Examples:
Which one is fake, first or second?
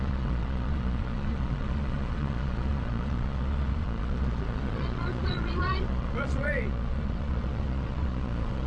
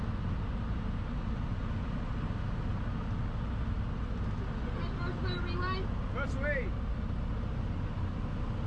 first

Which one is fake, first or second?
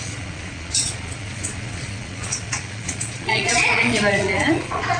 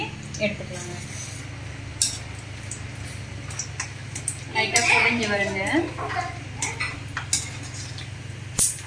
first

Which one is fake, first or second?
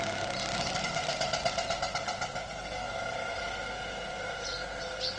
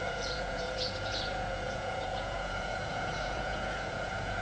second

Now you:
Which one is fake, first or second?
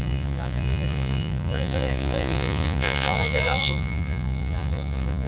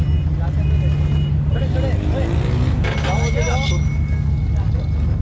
first